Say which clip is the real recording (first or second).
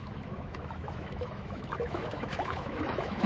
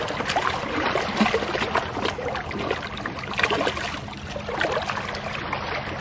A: second